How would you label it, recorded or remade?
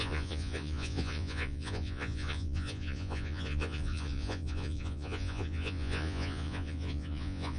remade